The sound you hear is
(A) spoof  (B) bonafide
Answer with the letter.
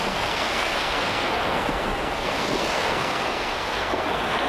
A